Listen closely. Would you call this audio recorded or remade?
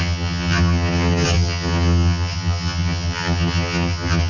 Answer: remade